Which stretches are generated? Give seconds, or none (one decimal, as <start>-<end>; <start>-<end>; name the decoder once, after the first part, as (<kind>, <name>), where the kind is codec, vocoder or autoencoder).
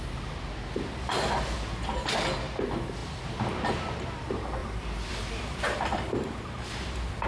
4.6-7.3 (vocoder, BigVGAN v2)